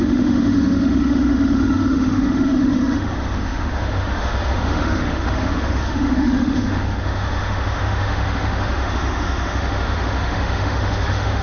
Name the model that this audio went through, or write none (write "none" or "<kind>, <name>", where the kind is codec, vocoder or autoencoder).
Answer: autoencoder, DAC-VAE